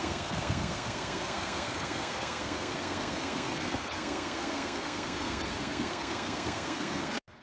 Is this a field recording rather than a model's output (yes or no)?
no